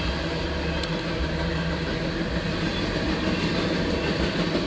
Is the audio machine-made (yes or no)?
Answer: no